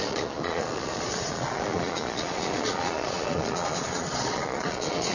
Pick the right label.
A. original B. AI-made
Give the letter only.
B